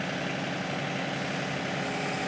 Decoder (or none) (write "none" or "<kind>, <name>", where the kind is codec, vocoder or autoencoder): none